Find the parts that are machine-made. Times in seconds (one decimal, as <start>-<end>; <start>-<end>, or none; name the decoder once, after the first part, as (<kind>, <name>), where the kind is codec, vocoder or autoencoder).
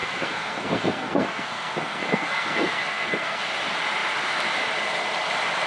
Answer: 0.0-3.4 (codec, SNAC)